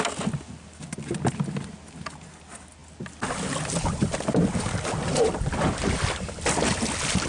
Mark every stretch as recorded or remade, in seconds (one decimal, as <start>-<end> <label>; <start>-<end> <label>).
0.0-7.3 recorded